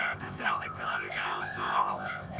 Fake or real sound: fake